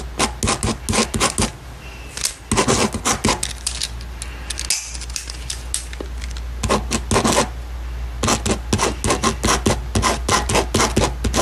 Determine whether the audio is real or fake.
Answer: real